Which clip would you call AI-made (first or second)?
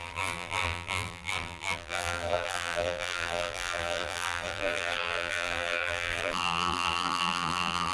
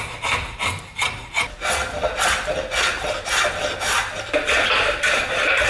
first